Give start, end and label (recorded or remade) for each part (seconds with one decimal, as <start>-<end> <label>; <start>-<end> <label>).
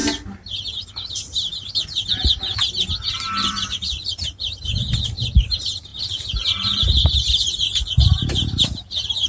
0.0-1.1 recorded; 1.1-1.5 remade; 1.5-3.5 recorded; 3.5-9.3 remade